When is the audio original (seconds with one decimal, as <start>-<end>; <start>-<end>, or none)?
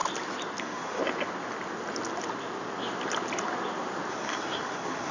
0.0-0.6; 1.0-4.1